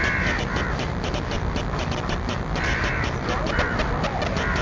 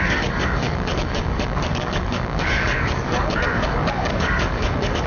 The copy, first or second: second